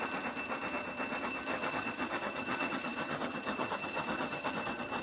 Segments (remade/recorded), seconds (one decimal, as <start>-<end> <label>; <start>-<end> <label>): 0.0-1.5 recorded; 1.5-4.5 remade; 4.5-5.0 recorded